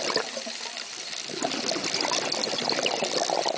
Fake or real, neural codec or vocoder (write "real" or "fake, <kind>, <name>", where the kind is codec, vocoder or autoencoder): real